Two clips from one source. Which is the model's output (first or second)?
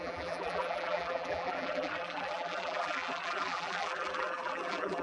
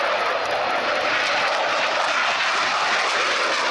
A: first